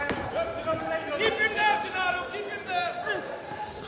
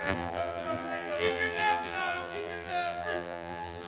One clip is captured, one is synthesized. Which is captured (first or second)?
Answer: first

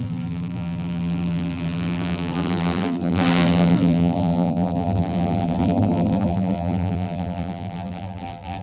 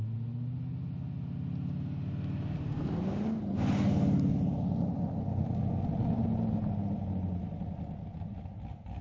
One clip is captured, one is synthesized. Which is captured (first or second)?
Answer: second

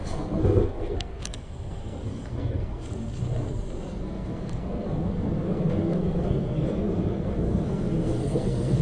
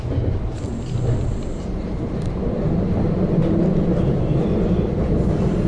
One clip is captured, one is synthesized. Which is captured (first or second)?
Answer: second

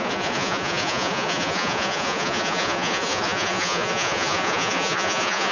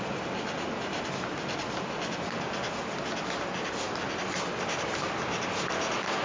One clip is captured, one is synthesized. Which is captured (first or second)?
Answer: second